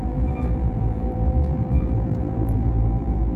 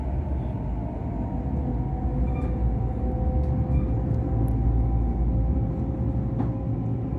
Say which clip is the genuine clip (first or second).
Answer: second